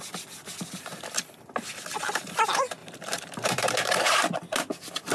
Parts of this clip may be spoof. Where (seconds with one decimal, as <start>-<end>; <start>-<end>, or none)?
2.8-4.1